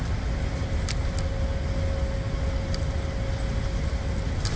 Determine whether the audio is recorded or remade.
recorded